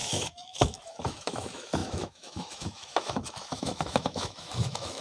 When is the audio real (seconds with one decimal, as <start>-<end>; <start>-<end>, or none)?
none